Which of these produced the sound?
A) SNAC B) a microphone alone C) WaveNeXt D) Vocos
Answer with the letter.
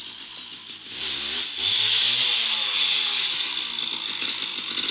B